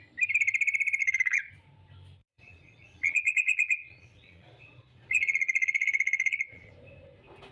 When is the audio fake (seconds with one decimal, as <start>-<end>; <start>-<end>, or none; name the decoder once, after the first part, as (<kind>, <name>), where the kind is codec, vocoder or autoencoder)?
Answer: 1.0-1.5 (vocoder, Vocos); 2.2-6.7

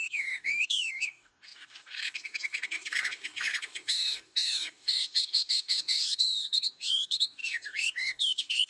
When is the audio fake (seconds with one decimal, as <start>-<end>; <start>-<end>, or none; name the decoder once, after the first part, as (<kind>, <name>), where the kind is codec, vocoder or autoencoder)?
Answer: 0.0-8.7 (codec, DAC)

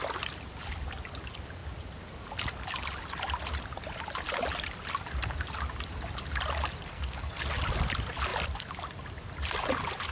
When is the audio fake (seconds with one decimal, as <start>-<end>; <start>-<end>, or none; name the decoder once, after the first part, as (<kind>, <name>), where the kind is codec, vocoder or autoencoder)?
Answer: 6.9-7.4 (codec, SNAC)

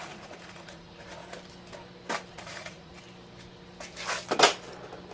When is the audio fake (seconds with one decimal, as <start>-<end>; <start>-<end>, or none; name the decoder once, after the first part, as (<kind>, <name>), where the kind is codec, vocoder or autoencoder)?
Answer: 0.0-1.2 (vocoder, Vocos); 2.3-2.9

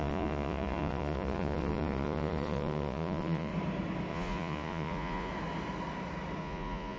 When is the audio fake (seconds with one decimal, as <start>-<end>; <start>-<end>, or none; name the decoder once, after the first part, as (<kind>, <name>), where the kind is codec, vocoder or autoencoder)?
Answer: 0.0-3.5 (vocoder, Vocos); 4.1-5.3; 6.4-7.0

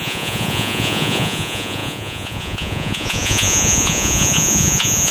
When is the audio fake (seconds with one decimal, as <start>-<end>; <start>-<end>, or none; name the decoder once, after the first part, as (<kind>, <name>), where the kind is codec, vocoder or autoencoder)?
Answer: 0.0-5.1 (vocoder, Vocos)